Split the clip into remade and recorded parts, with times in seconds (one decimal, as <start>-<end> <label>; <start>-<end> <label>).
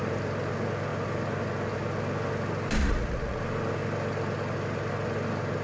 0.0-2.8 recorded; 2.8-3.4 remade; 3.4-5.6 recorded